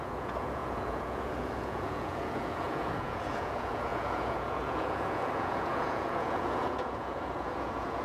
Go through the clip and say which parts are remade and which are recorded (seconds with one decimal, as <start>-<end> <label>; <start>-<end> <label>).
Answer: 0.0-8.0 remade